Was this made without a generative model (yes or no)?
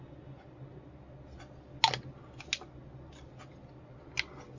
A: yes